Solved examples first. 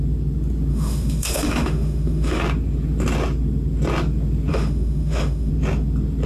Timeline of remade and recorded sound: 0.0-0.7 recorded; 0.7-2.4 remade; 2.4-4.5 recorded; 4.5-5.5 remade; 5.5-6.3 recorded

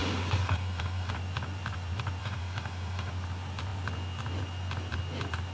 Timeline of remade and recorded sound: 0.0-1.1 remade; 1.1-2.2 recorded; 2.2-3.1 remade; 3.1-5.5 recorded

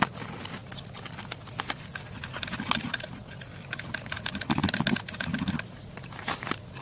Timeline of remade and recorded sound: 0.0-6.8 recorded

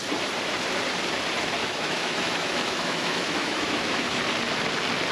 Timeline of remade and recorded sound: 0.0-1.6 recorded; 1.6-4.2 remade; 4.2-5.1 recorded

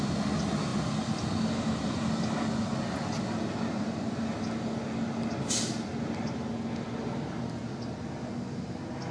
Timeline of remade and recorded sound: 0.0-9.1 recorded